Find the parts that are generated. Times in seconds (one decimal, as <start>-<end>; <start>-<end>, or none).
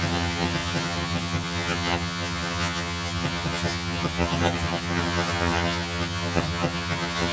0.0-7.3